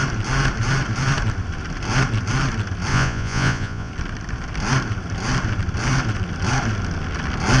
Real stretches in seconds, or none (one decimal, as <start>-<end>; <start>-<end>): 0.0-2.9; 3.9-7.6